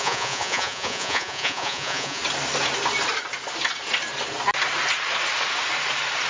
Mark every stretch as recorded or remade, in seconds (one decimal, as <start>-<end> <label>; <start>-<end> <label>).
0.0-2.2 remade; 2.2-6.3 recorded